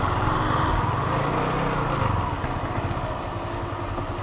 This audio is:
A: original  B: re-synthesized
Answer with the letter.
A